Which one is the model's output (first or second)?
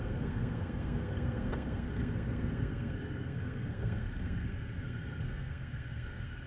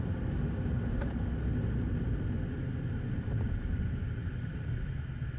first